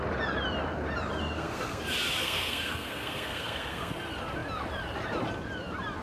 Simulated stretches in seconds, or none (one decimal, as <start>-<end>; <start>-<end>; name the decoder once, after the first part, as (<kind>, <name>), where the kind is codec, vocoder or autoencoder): 1.2-1.8 (codec, SNAC); 2.2-3.9